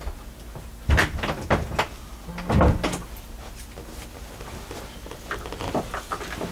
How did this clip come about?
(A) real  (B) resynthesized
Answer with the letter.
A